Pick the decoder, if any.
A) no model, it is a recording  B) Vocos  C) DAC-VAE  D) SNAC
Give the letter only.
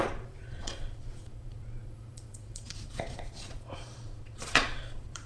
B